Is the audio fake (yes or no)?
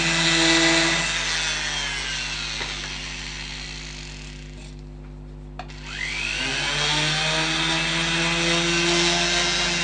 no